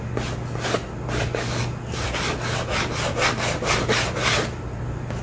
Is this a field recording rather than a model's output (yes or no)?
yes